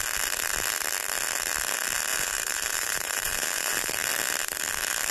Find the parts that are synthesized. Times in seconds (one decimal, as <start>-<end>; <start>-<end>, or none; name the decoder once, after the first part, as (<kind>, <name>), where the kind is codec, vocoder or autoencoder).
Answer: 2.1-3.9 (vocoder, BigVGAN v2)